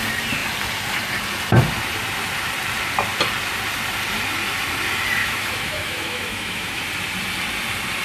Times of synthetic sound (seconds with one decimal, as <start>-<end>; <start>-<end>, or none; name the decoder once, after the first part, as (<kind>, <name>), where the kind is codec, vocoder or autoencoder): 5.2-6.8 (autoencoder, DAC-VAE)